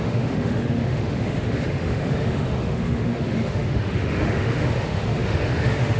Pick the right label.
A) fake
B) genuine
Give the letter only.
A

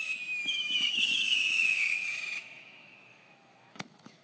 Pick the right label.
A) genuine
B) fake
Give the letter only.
B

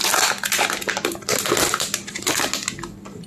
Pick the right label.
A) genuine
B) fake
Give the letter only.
A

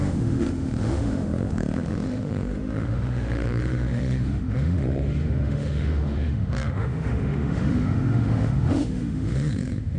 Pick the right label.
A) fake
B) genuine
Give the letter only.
A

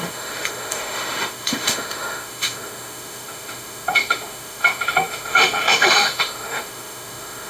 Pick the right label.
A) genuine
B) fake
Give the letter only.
B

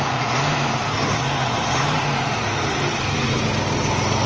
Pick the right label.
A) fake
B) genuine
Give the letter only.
B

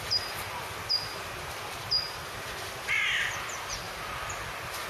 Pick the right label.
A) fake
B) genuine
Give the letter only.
B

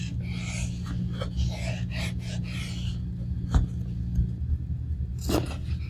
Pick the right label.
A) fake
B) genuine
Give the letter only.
B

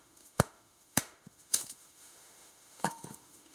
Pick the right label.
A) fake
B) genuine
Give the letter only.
A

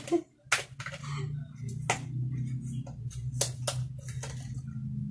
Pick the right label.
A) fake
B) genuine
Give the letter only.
B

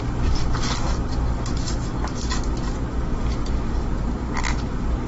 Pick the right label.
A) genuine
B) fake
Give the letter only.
A